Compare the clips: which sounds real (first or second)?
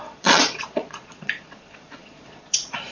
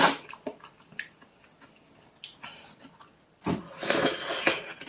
second